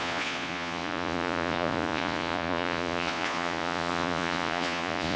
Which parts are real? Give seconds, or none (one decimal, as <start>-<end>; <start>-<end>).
none